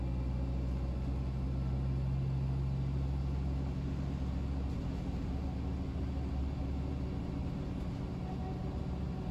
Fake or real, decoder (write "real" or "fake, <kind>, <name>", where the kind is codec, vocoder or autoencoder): real